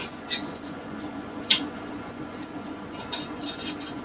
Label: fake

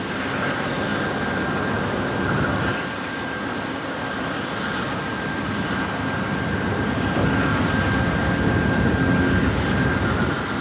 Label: real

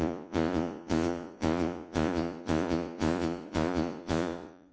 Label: fake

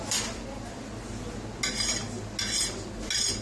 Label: real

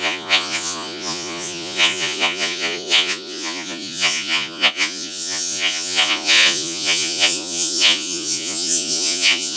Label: fake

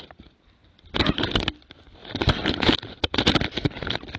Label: real